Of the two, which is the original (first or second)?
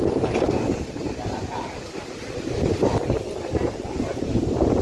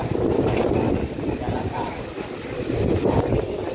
second